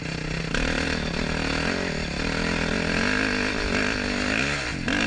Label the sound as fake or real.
real